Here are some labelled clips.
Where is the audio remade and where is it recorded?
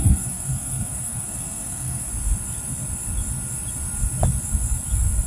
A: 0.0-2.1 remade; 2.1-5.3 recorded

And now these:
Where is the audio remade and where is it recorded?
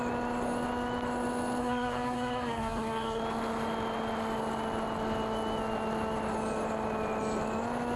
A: 0.0-1.6 recorded; 1.6-3.2 remade; 3.2-8.0 recorded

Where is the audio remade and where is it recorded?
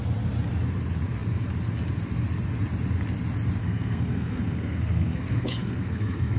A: 0.0-3.6 recorded; 3.6-6.4 remade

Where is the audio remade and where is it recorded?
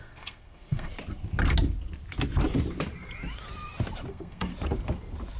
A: 0.0-0.9 remade; 0.9-4.1 recorded; 4.1-4.5 remade; 4.5-5.4 recorded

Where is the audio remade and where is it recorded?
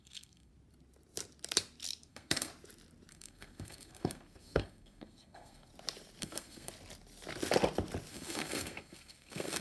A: 0.0-0.5 remade; 0.5-2.1 recorded; 2.1-2.5 remade; 2.5-3.1 recorded; 3.1-5.7 remade; 5.7-6.2 recorded; 6.2-6.7 remade; 6.7-8.1 recorded; 8.1-9.6 remade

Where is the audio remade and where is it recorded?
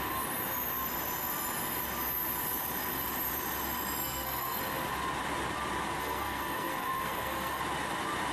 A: 0.0-4.0 recorded; 4.0-4.6 remade; 4.6-6.0 recorded; 6.0-7.6 remade; 7.6-8.3 recorded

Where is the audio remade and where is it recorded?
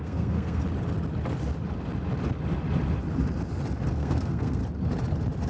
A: 0.0-0.6 remade; 0.6-3.9 recorded; 3.9-4.6 remade; 4.6-5.5 recorded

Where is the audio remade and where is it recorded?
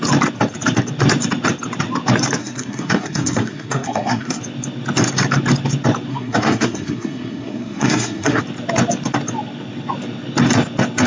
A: 0.0-2.4 recorded; 2.4-4.4 remade; 4.4-6.1 recorded; 6.1-8.4 remade; 8.4-11.1 recorded